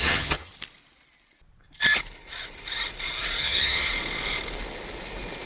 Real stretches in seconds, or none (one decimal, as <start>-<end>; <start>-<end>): 0.5-3.4; 3.9-5.5